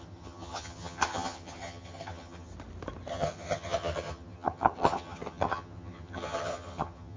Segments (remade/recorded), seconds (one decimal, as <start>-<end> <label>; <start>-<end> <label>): 0.0-2.5 remade; 2.5-3.1 recorded; 3.1-7.2 remade